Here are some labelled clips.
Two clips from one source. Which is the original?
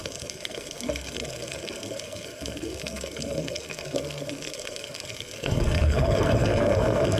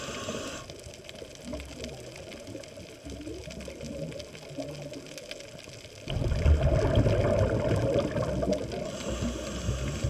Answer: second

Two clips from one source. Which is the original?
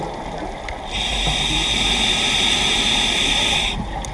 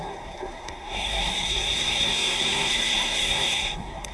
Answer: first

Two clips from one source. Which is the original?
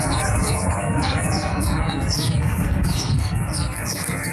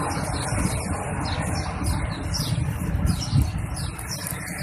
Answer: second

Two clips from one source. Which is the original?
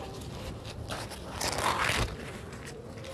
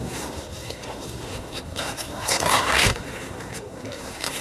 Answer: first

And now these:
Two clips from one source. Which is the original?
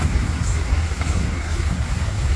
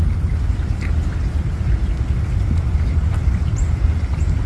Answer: second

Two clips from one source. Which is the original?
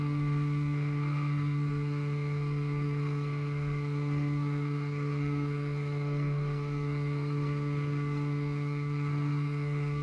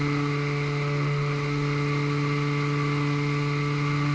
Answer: second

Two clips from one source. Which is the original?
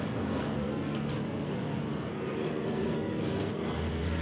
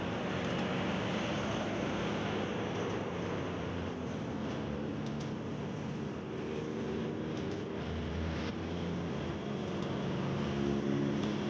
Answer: second